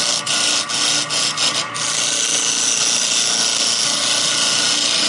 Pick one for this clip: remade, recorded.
recorded